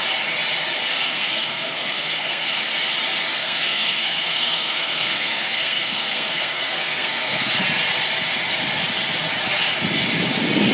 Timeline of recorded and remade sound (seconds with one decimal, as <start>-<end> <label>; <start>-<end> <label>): 0.0-0.9 recorded; 0.9-2.6 remade; 2.6-3.4 recorded; 3.4-7.5 remade; 7.5-10.7 recorded